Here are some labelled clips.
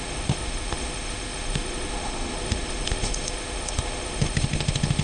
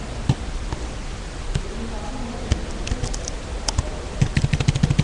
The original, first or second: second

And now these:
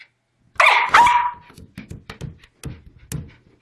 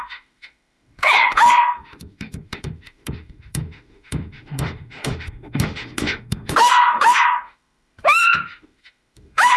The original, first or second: first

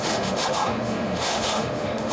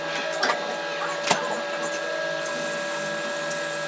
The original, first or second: second